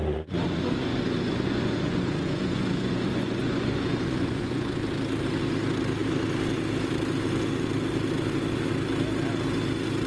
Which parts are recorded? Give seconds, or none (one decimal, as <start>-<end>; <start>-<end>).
4.8-10.1